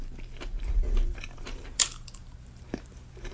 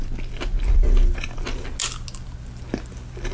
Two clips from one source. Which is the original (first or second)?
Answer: second